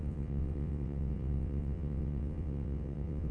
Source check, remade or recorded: remade